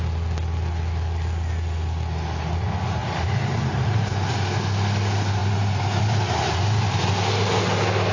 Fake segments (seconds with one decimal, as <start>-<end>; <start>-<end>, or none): 3.0-4.3; 5.4-6.0